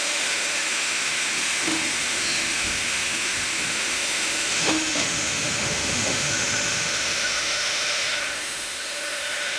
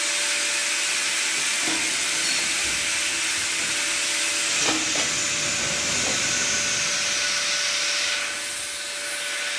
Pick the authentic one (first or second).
second